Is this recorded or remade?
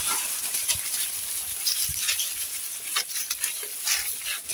recorded